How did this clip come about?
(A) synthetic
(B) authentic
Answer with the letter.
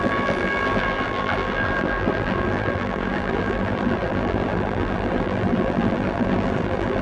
A